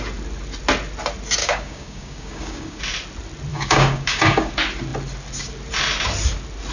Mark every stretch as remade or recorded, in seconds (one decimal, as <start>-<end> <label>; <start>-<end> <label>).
0.0-1.4 recorded; 1.4-2.8 remade; 2.8-3.5 recorded; 3.5-4.5 remade; 4.5-6.7 recorded